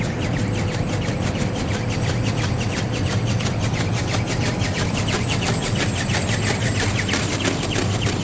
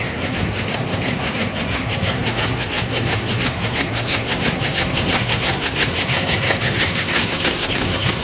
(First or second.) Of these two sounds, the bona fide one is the first